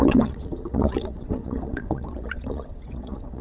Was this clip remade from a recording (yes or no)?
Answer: yes